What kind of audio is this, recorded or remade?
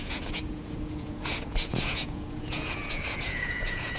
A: remade